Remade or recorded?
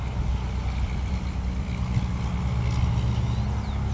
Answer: recorded